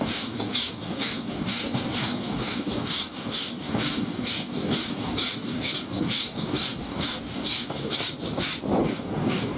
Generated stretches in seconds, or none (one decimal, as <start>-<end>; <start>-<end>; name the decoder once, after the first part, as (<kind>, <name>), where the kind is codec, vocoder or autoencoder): 0.0-8.0 (codec, DAC); 8.8-9.6